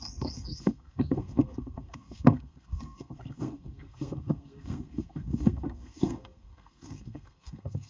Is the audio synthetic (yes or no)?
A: yes